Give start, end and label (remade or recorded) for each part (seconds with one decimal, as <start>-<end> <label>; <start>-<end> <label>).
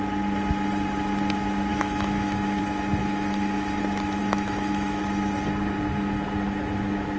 0.0-1.7 recorded; 1.7-2.6 remade; 2.6-3.0 recorded; 3.0-3.8 remade; 3.8-4.2 recorded; 4.2-5.0 remade; 5.0-7.2 recorded